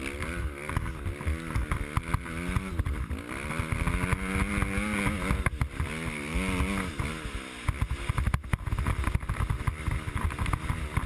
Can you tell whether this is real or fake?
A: real